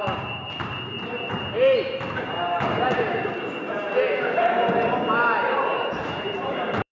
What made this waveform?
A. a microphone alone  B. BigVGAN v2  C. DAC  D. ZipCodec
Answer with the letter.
B